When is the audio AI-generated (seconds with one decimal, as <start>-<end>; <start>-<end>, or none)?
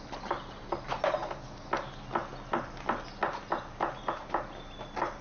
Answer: none